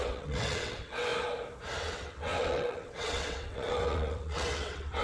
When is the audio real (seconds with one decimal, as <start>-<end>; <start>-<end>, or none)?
1.1-1.8